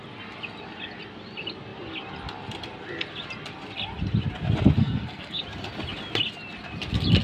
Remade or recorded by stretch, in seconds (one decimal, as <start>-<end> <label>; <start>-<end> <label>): 0.0-4.8 recorded; 4.8-5.4 remade; 5.4-7.2 recorded

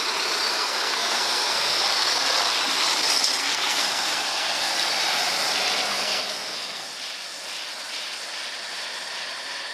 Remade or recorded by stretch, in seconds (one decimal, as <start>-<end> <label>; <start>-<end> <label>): 0.0-0.5 recorded; 0.5-1.8 remade; 1.8-3.4 recorded; 3.4-4.7 remade; 4.7-5.9 recorded; 5.9-6.9 remade; 6.9-9.7 recorded

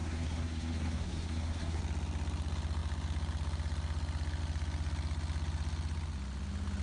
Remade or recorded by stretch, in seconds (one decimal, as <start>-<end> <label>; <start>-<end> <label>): 0.0-1.8 remade; 1.8-6.8 recorded

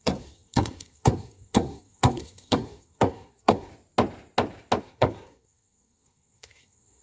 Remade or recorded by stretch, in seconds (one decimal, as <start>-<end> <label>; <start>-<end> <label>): 0.0-3.7 remade; 3.7-4.8 recorded; 4.8-7.0 remade

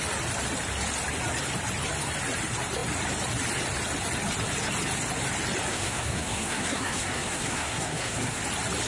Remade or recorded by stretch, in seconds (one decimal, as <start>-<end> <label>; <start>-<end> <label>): 0.0-5.7 recorded; 5.7-8.4 remade; 8.4-8.9 recorded

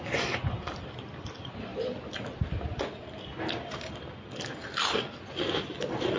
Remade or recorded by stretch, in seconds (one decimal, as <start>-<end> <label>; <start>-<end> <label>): 0.0-6.2 recorded